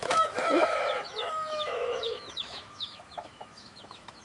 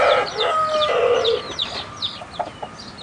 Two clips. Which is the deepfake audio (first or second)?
first